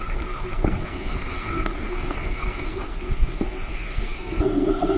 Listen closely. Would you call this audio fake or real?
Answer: fake